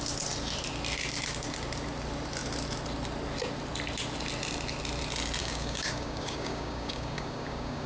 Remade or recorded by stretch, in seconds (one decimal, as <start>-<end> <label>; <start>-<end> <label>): 0.0-5.4 recorded; 5.4-7.9 remade